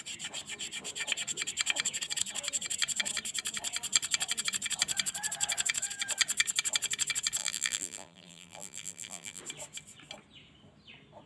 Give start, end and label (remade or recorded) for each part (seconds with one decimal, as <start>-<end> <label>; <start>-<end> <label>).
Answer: 0.0-7.4 recorded; 7.4-9.4 remade; 9.4-11.3 recorded